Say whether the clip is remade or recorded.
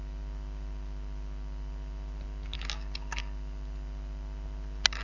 recorded